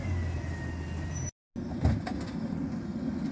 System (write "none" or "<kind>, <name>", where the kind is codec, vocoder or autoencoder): none